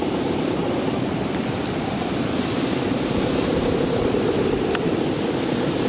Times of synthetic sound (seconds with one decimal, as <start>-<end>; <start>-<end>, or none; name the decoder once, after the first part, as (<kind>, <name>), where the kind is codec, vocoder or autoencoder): none